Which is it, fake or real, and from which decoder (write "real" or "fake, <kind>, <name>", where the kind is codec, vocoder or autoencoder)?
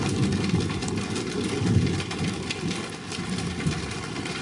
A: real